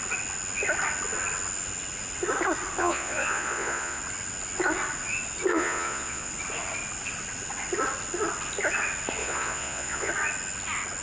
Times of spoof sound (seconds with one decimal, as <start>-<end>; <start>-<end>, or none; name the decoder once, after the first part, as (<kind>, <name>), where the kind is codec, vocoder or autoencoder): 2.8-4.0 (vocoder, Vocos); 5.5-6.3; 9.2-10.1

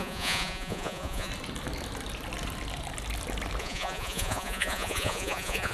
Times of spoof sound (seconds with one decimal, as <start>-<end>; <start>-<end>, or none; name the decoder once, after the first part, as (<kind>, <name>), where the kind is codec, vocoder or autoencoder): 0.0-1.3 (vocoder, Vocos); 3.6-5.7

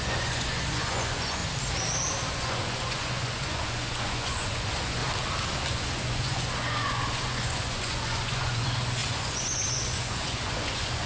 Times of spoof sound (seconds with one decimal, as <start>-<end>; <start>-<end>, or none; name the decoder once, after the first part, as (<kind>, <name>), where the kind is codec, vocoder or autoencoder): 0.0-1.4 (vocoder, Vocos); 2.3-5.0; 5.7-11.1